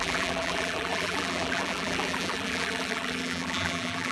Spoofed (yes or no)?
yes